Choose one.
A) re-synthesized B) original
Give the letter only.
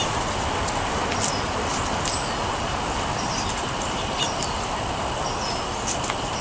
B